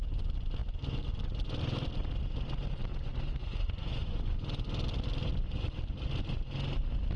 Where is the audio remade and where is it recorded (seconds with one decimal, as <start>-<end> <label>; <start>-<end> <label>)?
0.0-2.9 recorded; 2.9-4.3 remade; 4.3-7.2 recorded